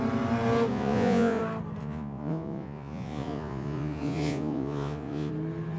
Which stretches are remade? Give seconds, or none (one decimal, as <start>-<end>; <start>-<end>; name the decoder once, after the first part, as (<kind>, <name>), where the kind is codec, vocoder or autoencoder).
0.7-1.4 (vocoder, Vocos); 1.8-5.3